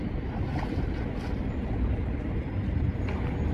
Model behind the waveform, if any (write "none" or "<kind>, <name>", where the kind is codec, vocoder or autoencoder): none